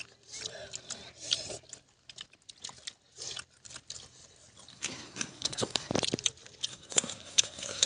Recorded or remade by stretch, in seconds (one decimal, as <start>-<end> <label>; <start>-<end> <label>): 0.0-4.7 recorded; 4.7-5.9 remade; 5.9-6.7 recorded; 6.7-7.9 remade

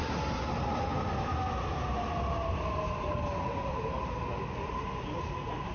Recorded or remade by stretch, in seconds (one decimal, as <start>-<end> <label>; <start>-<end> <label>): 0.0-5.7 recorded

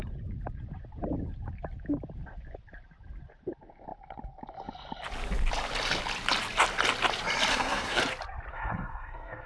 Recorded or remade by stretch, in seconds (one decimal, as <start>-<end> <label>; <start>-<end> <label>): 0.0-7.5 recorded; 7.5-8.0 remade; 8.0-8.5 recorded; 8.5-9.5 remade

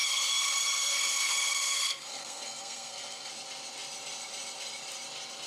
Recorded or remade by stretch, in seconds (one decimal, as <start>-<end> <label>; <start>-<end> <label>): 0.0-3.3 remade; 3.3-5.5 recorded

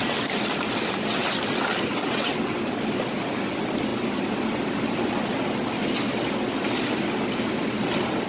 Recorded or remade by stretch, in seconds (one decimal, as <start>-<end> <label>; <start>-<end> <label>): 0.0-2.0 recorded; 2.0-2.6 remade; 2.6-8.3 recorded

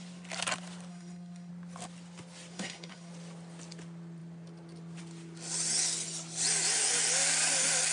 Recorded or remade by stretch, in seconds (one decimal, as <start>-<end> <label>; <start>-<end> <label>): 0.0-0.9 recorded; 0.9-1.5 remade; 1.5-2.5 recorded; 2.5-3.1 remade; 3.1-7.9 recorded

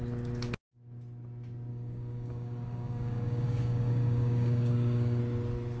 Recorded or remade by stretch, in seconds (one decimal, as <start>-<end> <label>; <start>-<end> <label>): 0.0-1.7 recorded; 1.7-5.2 remade; 5.2-5.8 recorded

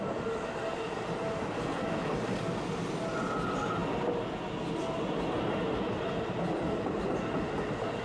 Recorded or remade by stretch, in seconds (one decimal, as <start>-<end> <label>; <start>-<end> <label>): 0.0-8.0 recorded